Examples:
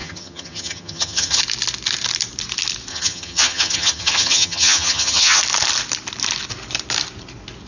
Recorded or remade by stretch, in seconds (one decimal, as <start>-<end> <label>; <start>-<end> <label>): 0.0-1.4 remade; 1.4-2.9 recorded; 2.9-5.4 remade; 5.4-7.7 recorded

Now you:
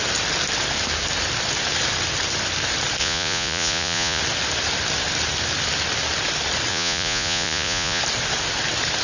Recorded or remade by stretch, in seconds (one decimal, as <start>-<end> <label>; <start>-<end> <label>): 0.0-3.0 recorded; 3.0-4.2 remade; 4.2-6.7 recorded; 6.7-8.0 remade; 8.0-9.0 recorded

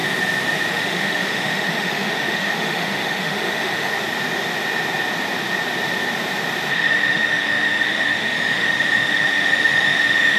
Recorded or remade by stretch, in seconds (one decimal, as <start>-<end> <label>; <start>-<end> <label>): 0.0-0.7 recorded; 0.7-3.9 remade; 3.9-6.7 recorded; 6.7-10.4 remade

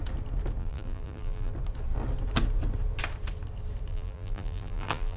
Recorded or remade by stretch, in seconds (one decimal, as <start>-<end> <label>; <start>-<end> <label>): 0.0-0.6 recorded; 0.6-1.5 remade; 1.5-3.9 recorded; 3.9-5.2 remade

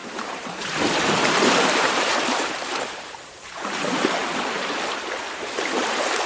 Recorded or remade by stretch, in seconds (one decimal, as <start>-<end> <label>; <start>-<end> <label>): 0.0-4.2 remade; 4.2-5.0 recorded; 5.0-6.3 remade

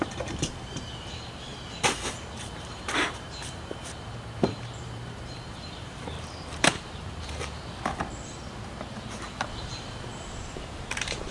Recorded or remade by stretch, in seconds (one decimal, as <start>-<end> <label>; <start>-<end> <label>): 0.0-1.5 remade; 1.5-2.1 recorded; 2.1-11.3 remade

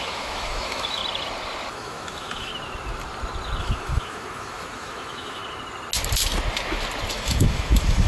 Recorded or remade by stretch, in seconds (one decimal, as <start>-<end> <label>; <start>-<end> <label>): 0.0-1.0 remade; 1.0-1.7 recorded; 1.7-2.5 remade; 2.5-3.6 recorded; 3.6-5.4 remade; 5.4-7.1 recorded; 7.1-8.1 remade